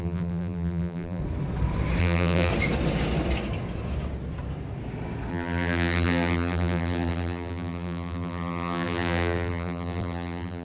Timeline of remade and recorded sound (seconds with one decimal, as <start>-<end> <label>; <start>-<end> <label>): 0.0-1.2 remade; 1.2-2.0 recorded; 2.0-2.5 remade; 2.5-5.3 recorded; 5.3-10.6 remade